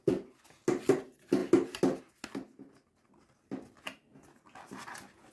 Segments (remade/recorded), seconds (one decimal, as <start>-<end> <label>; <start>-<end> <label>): 0.0-5.3 recorded